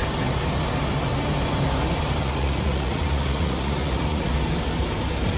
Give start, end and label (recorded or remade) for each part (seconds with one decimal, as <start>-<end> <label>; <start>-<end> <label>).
0.0-2.2 recorded; 2.2-4.3 remade; 4.3-5.4 recorded